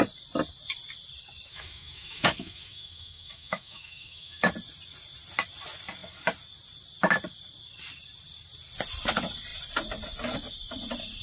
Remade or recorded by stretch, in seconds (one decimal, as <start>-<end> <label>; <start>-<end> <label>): 0.0-1.5 recorded; 1.5-4.5 remade; 4.5-11.2 recorded